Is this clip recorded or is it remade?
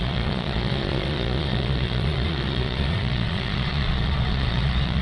remade